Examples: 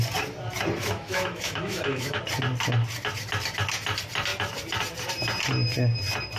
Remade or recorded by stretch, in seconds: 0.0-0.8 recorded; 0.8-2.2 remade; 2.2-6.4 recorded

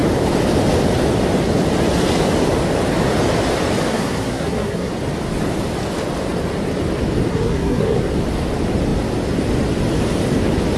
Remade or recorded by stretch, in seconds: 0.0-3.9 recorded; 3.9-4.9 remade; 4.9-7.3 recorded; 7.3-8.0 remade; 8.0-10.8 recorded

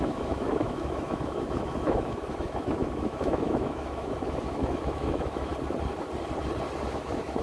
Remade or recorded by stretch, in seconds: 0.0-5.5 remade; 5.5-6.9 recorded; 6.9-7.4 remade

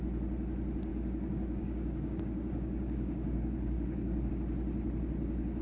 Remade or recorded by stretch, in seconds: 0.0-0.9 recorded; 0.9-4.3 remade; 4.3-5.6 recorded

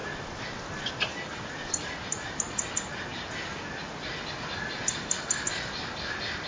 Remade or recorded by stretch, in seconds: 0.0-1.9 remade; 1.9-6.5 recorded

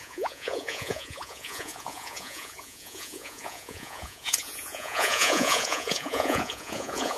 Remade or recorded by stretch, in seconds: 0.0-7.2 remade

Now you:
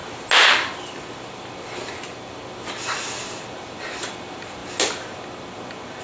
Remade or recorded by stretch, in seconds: 0.0-6.0 recorded

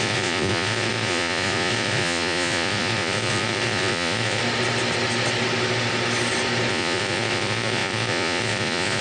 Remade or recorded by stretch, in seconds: 0.0-4.4 remade; 4.4-6.7 recorded; 6.7-9.0 remade